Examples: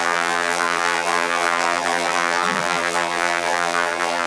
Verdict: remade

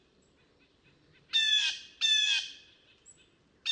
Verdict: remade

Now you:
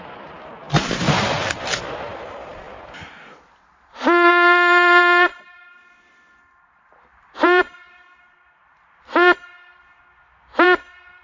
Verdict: remade